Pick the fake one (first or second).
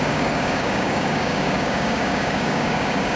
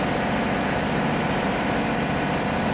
first